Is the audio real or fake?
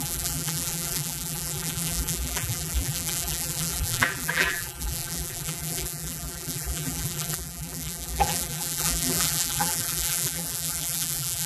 fake